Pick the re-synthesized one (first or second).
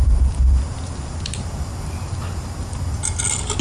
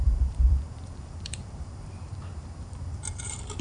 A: second